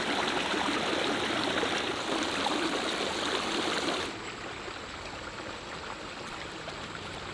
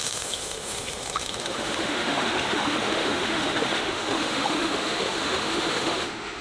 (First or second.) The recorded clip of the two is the first